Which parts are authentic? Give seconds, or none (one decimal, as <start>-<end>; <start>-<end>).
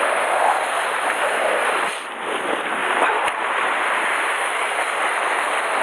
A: 0.0-5.8